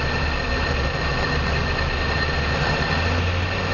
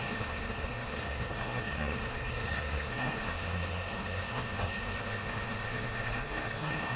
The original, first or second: first